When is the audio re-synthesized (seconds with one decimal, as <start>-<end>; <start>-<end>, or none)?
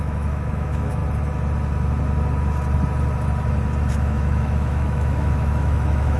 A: 0.0-1.0; 3.9-6.2